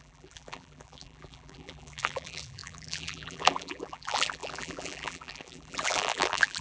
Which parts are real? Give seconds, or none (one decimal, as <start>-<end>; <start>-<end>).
none